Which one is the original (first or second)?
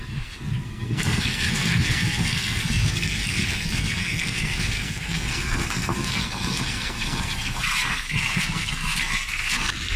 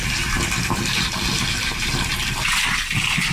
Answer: second